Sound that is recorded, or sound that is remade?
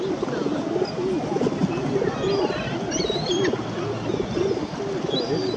recorded